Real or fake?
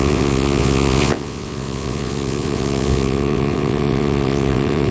fake